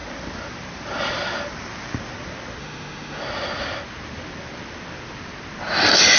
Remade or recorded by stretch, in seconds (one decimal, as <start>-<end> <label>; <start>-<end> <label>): 0.0-2.6 recorded; 2.6-3.2 remade; 3.2-6.2 recorded